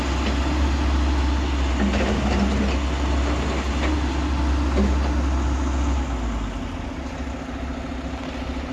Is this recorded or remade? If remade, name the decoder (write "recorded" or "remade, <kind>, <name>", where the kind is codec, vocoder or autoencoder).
recorded